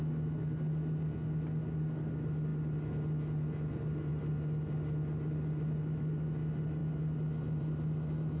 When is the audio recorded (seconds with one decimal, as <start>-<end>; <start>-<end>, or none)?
0.0-8.4